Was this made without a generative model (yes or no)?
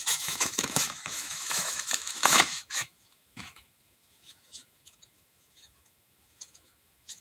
no